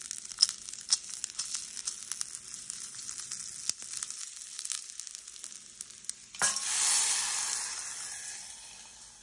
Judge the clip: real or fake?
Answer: real